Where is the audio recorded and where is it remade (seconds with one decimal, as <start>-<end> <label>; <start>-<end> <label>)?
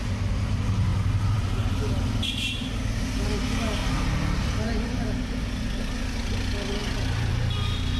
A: 0.0-8.0 recorded